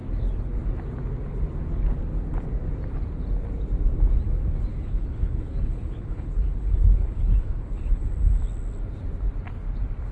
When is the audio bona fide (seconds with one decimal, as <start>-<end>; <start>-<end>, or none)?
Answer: 0.0-4.7; 8.1-10.1